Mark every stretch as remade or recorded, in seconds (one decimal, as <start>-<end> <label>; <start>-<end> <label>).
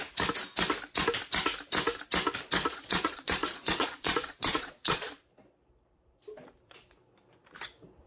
0.0-2.6 recorded; 2.6-5.2 remade; 5.2-8.1 recorded